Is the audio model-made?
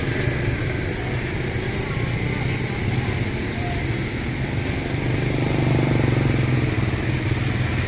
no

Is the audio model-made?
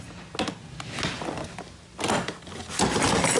no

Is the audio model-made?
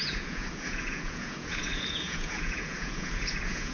yes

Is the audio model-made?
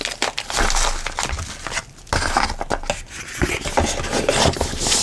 no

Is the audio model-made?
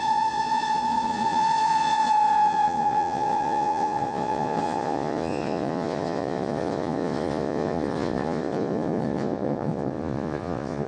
yes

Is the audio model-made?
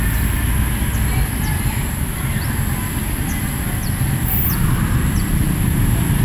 no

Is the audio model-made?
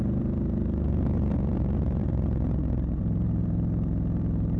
yes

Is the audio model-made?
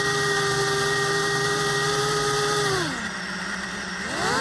no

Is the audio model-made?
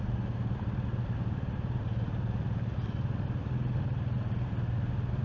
no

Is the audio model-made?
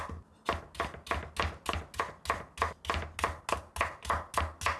no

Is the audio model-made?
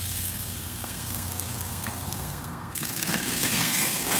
yes